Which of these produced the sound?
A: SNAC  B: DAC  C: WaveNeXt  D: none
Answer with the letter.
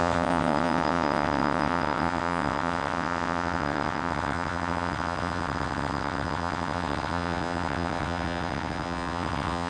C